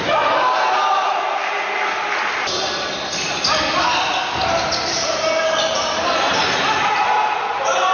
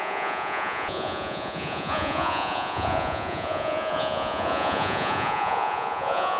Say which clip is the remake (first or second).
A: second